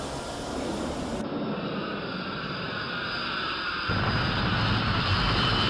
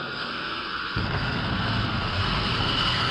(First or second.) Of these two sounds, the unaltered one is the first